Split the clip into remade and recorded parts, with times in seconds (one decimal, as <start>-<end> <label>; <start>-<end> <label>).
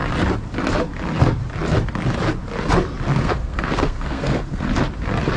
0.0-3.2 recorded; 3.2-4.7 remade; 4.7-5.4 recorded